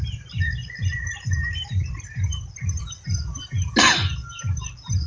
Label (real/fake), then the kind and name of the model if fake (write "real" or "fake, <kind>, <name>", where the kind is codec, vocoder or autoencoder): real